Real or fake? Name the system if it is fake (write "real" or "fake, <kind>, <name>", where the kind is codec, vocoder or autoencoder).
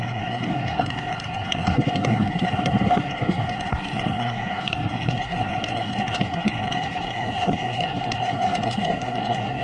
fake, codec, SNAC